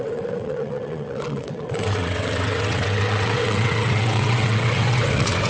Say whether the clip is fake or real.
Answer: fake